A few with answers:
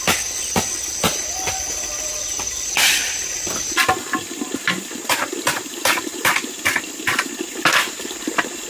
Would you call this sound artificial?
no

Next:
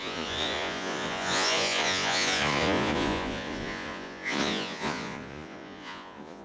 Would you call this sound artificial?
yes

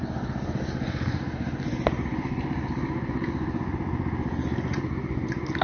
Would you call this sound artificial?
no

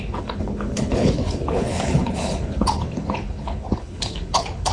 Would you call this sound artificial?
yes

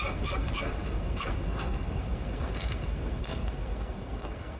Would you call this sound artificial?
yes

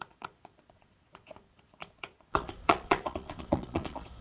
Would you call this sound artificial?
yes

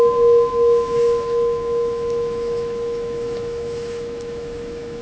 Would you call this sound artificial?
yes